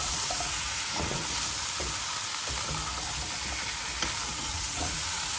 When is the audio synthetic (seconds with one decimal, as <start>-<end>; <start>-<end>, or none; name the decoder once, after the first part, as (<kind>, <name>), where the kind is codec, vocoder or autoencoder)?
0.0-1.2 (vocoder, Vocos); 4.4-5.4